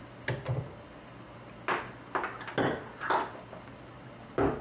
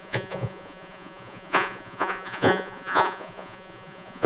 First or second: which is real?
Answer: first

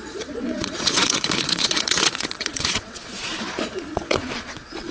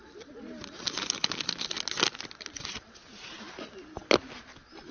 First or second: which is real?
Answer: second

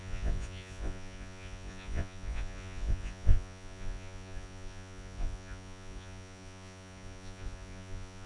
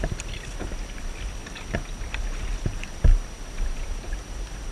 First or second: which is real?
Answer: second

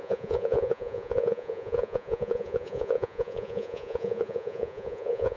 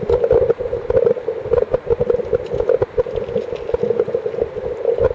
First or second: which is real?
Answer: second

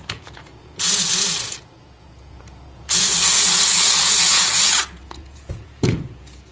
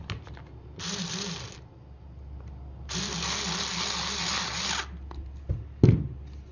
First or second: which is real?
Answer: second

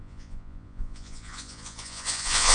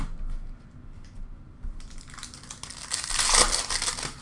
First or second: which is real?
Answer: second